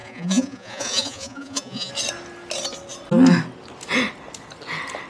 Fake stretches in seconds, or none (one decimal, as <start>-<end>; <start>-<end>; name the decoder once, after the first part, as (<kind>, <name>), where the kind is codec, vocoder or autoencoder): 0.0-1.9 (vocoder, Vocos)